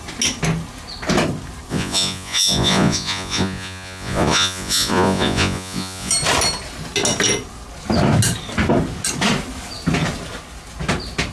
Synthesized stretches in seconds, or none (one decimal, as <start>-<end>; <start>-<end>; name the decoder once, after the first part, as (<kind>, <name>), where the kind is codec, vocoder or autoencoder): 1.7-6.1 (vocoder, Vocos)